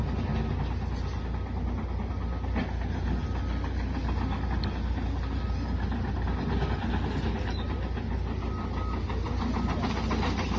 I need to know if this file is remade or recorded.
recorded